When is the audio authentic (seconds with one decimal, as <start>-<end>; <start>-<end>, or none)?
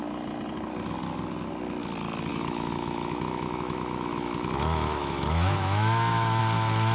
0.0-2.3; 6.4-6.9